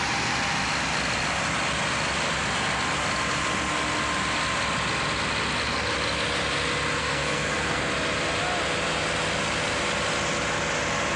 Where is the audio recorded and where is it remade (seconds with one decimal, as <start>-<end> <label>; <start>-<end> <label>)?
0.0-7.0 recorded; 7.0-7.8 remade; 7.8-11.2 recorded